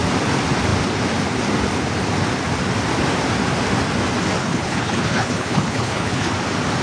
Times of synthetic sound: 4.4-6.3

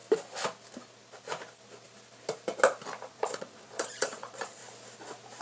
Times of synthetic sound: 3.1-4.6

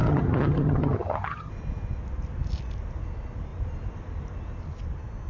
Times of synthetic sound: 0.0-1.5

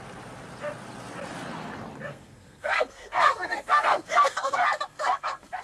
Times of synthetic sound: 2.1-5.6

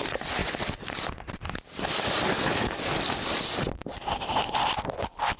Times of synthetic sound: 0.4-3.3; 3.8-5.4

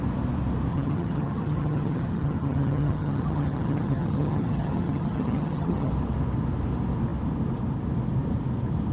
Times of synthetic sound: 0.7-5.9

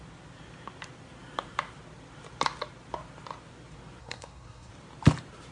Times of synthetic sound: 4.0-4.7

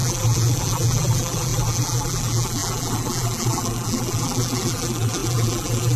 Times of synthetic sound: 0.0-6.0